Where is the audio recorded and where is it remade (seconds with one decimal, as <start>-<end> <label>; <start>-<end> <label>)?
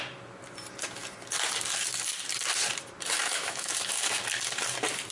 0.0-3.2 recorded; 3.2-4.2 remade; 4.2-5.1 recorded